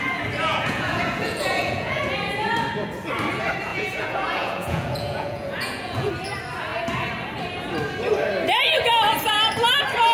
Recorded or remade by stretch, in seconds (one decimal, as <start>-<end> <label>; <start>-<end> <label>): 0.0-0.5 recorded; 0.5-2.0 remade; 2.0-3.7 recorded; 3.7-6.1 remade; 6.1-10.1 recorded